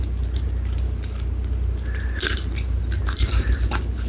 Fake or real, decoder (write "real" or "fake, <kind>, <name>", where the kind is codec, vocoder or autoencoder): fake, vocoder, BigVGAN v2